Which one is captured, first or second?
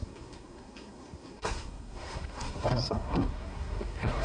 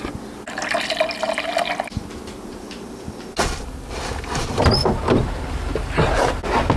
second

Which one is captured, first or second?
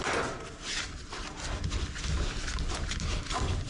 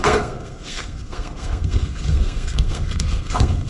first